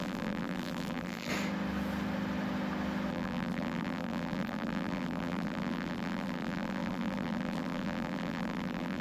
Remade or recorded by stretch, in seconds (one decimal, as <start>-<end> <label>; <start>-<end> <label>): 0.0-1.3 remade; 1.3-3.1 recorded; 3.1-9.0 remade

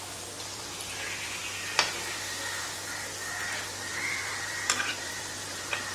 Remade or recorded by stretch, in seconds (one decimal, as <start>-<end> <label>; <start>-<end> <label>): 0.0-1.4 remade; 1.4-4.1 recorded; 4.1-5.9 remade

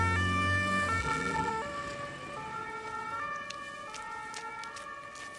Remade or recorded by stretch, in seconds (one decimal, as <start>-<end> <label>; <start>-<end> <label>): 0.0-1.0 recorded; 1.0-1.5 remade; 1.5-5.4 recorded

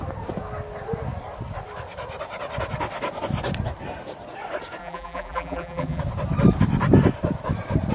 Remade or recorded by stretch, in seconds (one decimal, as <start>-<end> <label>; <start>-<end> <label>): 0.0-4.8 recorded; 4.8-6.0 remade; 6.0-7.9 recorded

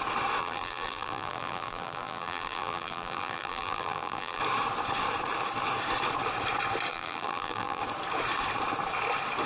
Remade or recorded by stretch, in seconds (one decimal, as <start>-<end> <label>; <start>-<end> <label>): 0.0-0.4 recorded; 0.4-4.4 remade; 4.4-6.9 recorded; 6.9-7.8 remade; 7.8-9.5 recorded